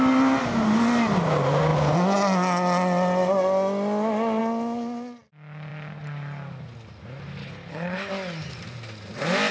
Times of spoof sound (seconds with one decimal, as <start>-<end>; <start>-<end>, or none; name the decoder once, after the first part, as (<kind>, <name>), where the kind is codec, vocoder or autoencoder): 7.4-8.1 (codec, HILCodec)